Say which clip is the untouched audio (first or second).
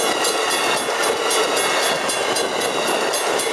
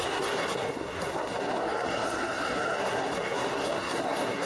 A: first